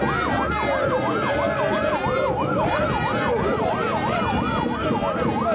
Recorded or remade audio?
recorded